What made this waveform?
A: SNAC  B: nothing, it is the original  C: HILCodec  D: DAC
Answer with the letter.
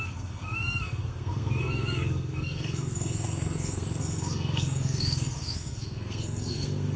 A